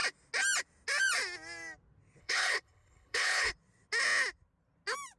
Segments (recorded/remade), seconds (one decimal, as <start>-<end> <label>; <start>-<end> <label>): 0.0-2.2 recorded; 2.2-3.5 remade; 3.5-5.2 recorded